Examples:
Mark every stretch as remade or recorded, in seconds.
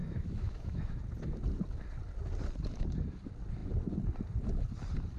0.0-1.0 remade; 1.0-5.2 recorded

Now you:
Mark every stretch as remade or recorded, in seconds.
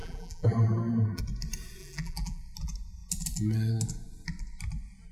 0.0-1.2 remade; 1.2-1.8 recorded; 1.8-2.4 remade; 2.4-5.1 recorded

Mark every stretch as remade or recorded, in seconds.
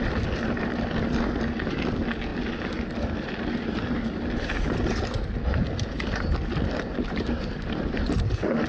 0.0-8.7 recorded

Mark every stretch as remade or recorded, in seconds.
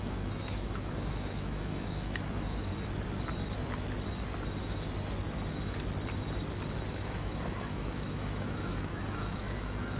0.0-2.7 remade; 2.7-6.9 recorded; 6.9-10.0 remade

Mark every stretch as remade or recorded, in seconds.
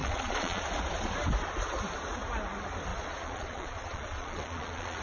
0.0-0.6 remade; 0.6-2.9 recorded; 2.9-5.0 remade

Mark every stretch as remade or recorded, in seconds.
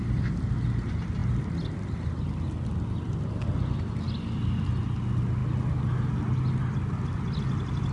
0.0-7.9 recorded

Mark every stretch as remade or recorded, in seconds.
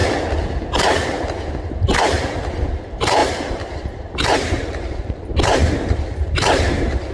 0.0-1.7 recorded; 1.7-7.1 remade